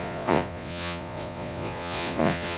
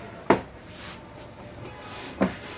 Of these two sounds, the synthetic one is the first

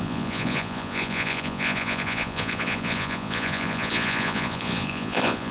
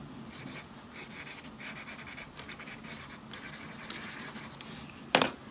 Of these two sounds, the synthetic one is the first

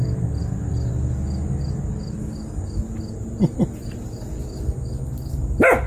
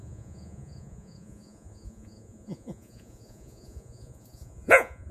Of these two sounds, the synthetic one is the second